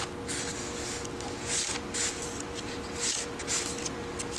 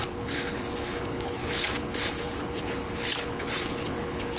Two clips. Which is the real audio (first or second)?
first